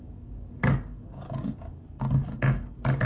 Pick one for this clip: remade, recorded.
remade